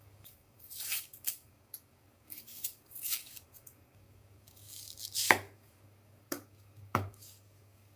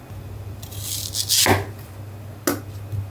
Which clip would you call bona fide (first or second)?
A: second